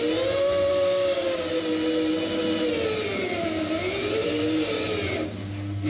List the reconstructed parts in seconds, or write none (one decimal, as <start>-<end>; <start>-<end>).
0.7-1.6; 4.2-4.8